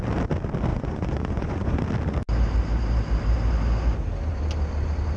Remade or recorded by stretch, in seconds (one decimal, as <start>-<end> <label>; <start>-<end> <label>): 0.0-0.7 recorded; 0.7-1.8 remade; 1.8-5.2 recorded